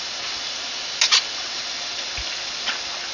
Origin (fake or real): real